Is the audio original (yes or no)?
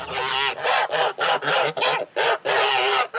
yes